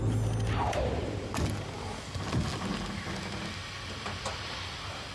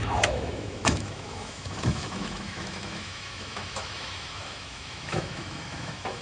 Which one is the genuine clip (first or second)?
first